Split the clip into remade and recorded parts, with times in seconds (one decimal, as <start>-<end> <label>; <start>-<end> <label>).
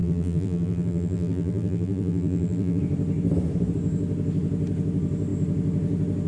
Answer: 0.0-2.8 remade; 2.8-6.3 recorded